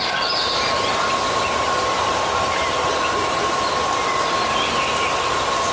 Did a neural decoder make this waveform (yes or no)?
no